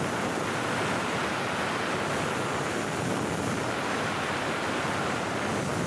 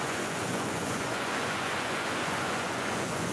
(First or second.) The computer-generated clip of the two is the second